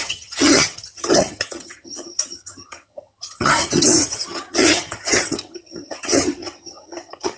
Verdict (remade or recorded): remade